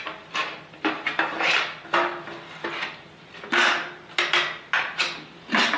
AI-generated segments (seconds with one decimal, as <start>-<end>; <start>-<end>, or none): none